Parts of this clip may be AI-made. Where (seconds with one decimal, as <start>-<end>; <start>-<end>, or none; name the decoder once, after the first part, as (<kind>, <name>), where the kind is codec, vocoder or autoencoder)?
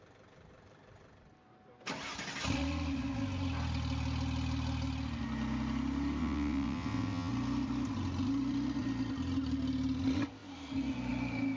6.2-7.3 (vocoder, WaveNeXt)